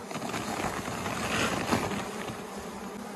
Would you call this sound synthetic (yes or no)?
no